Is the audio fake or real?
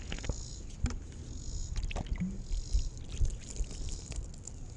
real